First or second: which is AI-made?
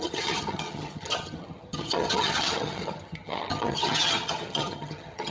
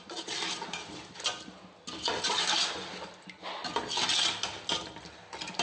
first